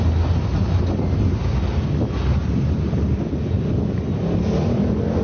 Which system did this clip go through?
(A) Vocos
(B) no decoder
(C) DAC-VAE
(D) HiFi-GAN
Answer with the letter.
B